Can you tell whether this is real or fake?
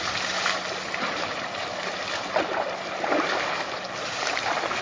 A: real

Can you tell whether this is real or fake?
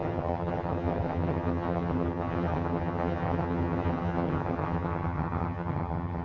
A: fake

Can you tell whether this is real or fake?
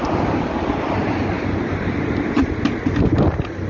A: real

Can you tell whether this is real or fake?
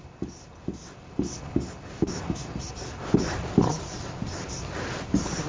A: real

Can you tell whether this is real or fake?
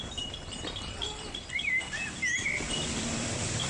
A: fake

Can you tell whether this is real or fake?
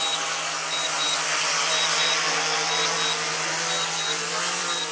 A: real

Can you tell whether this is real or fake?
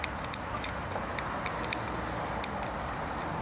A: real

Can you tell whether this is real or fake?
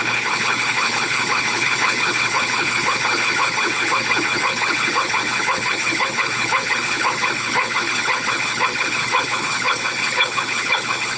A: fake